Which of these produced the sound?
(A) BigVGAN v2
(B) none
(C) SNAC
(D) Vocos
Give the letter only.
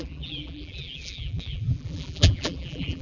A